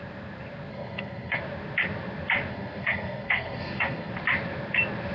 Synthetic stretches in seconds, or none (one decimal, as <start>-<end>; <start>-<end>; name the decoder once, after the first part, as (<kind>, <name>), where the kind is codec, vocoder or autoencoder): 0.7-1.4 (codec, SNAC); 2.5-4.1